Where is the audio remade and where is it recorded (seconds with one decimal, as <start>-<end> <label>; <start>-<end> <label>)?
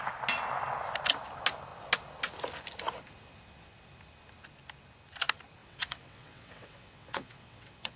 0.0-5.6 recorded; 5.6-8.0 remade